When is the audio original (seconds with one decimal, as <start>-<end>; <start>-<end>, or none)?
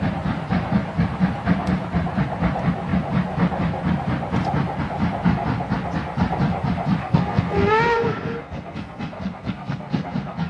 0.0-7.0